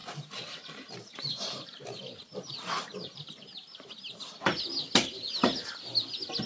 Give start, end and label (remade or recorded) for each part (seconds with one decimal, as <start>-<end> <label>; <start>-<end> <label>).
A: 0.0-3.9 remade; 3.9-6.5 recorded